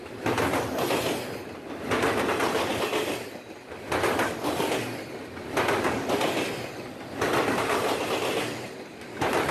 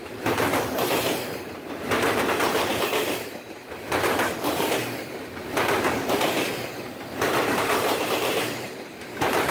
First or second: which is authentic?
first